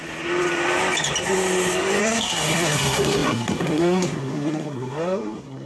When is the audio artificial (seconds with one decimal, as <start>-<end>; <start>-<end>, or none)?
2.0-5.7